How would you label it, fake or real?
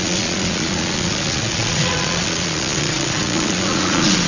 fake